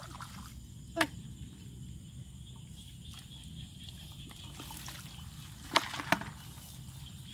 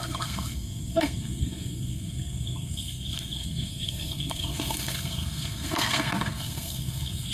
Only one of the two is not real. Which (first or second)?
second